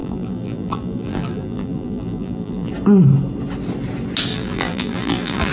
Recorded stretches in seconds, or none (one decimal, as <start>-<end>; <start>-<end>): 2.7-4.3